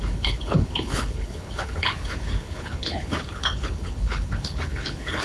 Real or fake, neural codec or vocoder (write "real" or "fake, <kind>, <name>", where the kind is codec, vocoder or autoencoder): fake, codec, HILCodec